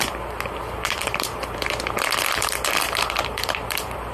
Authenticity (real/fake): fake